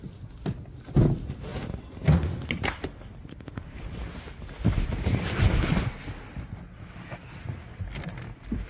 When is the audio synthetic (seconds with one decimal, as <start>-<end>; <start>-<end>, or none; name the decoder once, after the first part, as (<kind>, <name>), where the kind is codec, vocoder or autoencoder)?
none